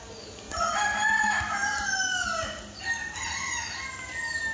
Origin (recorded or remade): recorded